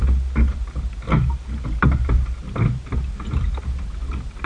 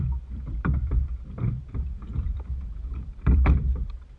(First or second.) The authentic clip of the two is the first